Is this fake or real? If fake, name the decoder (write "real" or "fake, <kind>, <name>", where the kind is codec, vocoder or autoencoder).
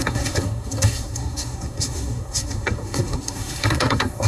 fake, codec, SNAC